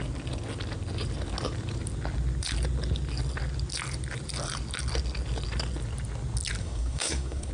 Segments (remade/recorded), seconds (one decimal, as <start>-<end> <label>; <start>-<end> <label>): 0.0-6.6 recorded; 6.6-7.5 remade